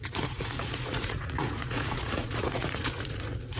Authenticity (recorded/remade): remade